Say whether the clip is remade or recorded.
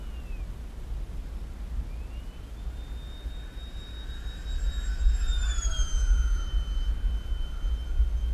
recorded